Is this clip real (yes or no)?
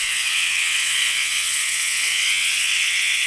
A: no